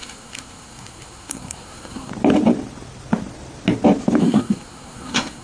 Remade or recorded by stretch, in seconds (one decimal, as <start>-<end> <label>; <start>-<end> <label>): 0.0-2.1 remade; 2.1-4.2 recorded; 4.2-5.4 remade